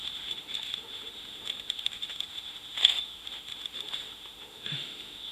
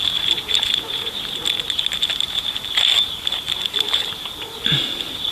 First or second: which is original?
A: second